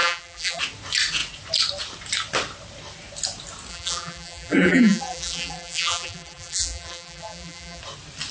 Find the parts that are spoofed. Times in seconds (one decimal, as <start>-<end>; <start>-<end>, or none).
0.0-0.6; 3.7-7.8